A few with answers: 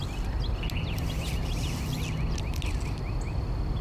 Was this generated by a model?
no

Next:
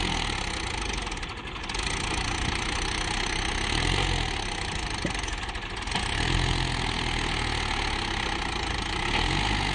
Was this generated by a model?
no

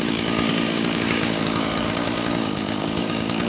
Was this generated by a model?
yes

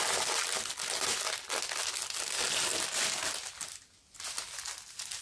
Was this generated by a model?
no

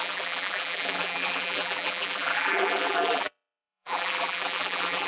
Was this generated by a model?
yes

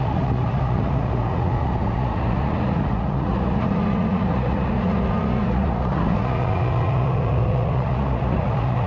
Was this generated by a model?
yes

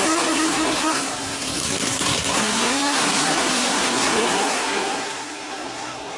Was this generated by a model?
yes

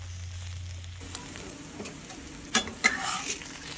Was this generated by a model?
no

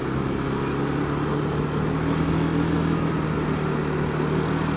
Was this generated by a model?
no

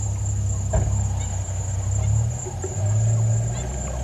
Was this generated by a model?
no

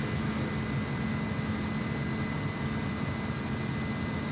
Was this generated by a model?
no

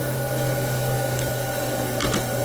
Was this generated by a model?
yes